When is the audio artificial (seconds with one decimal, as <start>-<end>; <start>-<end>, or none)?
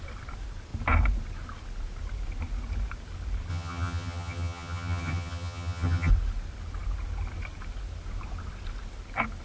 3.5-6.1